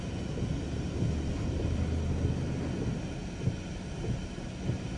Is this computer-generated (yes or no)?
no